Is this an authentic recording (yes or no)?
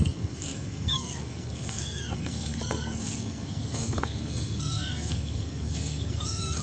no